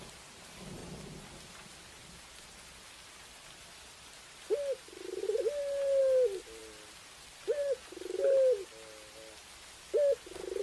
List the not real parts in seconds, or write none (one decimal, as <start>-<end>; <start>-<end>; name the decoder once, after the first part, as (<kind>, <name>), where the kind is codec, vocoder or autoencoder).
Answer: 5.2-6.0 (vocoder, BigVGAN v2)